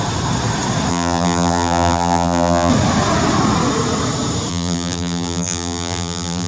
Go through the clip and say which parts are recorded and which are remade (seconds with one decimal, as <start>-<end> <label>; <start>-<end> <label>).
0.0-0.9 recorded; 0.9-2.7 remade; 2.7-4.5 recorded; 4.5-6.5 remade